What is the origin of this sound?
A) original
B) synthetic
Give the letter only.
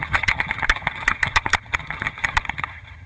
B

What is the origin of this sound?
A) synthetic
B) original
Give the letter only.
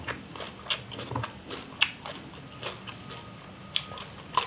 B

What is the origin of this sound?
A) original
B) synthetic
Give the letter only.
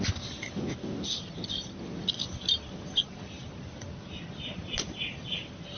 A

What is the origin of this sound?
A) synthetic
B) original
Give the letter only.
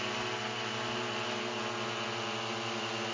B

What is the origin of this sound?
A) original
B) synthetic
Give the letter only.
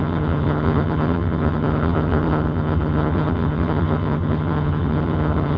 B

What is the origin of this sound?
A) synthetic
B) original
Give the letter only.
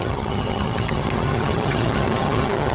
A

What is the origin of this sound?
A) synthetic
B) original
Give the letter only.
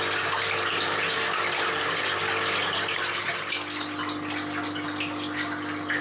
B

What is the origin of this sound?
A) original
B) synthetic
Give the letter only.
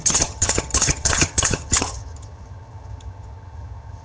B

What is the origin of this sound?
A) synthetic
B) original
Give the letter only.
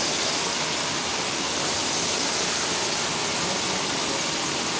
B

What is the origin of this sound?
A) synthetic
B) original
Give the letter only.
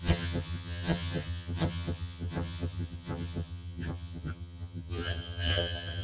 A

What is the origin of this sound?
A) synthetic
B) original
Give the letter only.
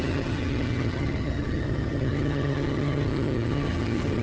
A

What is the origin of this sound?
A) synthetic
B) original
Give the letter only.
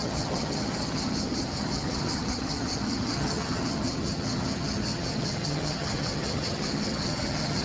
A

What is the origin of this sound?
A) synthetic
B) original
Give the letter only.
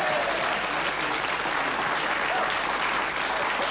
B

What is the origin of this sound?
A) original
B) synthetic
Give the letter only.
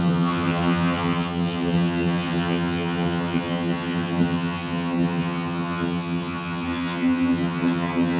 B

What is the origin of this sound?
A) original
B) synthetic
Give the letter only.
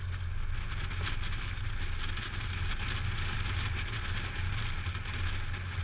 A